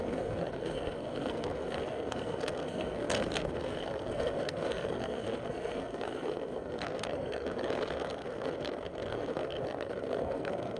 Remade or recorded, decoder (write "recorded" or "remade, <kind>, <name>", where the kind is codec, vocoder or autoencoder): remade, codec, SNAC